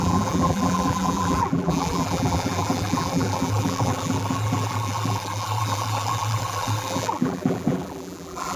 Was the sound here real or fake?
fake